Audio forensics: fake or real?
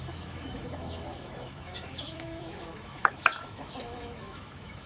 fake